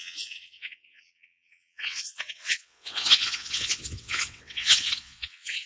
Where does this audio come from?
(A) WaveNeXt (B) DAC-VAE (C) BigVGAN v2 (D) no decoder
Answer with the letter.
A